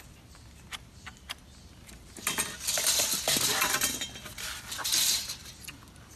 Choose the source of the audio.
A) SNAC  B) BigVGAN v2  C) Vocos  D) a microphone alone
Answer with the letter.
D